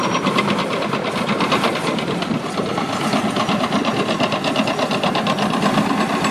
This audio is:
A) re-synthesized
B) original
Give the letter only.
B